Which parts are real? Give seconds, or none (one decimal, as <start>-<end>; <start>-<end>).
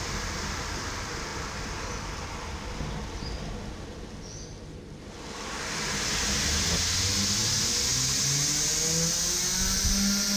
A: 0.0-10.4